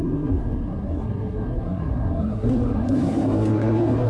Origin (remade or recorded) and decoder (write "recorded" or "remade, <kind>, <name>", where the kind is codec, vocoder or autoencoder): remade, codec, SNAC